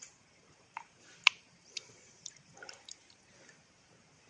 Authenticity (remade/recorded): remade